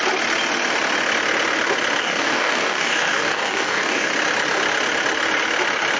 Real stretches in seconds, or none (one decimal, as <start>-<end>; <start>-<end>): 0.0-2.0; 4.1-6.0